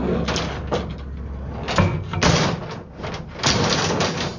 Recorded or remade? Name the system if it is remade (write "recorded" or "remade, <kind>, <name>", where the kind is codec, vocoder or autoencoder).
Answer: recorded